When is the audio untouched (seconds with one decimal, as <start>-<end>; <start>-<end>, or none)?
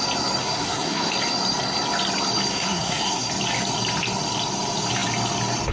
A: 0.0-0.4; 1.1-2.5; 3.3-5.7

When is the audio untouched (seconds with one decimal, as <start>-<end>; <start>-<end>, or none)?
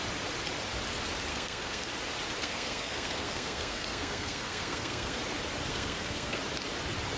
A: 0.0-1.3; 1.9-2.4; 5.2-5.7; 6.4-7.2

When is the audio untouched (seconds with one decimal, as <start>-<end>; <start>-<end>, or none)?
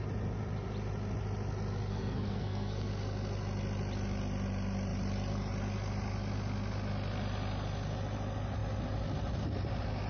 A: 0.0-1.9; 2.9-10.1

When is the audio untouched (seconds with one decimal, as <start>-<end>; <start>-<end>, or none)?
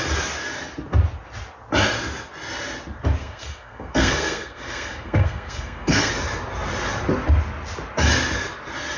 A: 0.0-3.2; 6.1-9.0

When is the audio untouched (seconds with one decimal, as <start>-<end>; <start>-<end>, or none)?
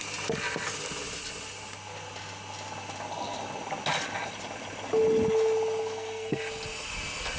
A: 0.0-5.8; 6.4-7.4